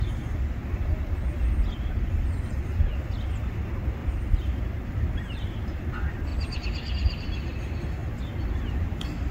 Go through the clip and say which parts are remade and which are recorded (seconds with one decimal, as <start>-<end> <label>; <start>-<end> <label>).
0.0-4.0 recorded; 4.0-5.8 remade; 5.8-6.3 recorded; 6.3-7.2 remade; 7.2-9.3 recorded